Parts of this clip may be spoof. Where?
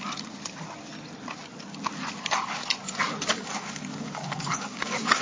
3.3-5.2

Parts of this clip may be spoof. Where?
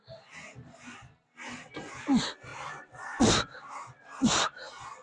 none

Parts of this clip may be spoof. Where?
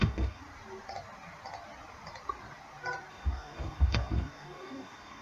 0.0-0.4; 3.1-5.2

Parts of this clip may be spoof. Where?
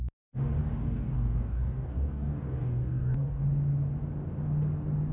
0.6-3.4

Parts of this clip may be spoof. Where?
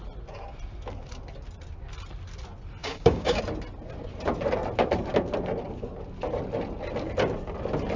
2.8-3.4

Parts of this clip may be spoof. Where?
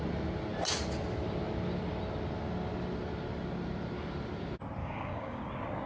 4.8-5.4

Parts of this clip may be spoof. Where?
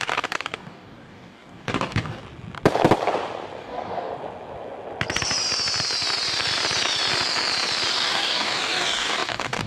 0.0-2.2; 3.6-4.1; 7.9-9.7